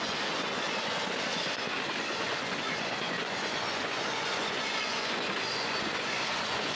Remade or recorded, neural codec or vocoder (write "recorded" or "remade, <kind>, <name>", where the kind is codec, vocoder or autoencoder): remade, vocoder, Vocos